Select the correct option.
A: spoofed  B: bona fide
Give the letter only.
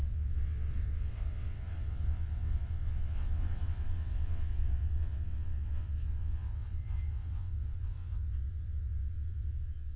A